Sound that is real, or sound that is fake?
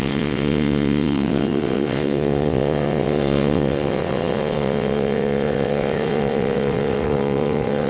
fake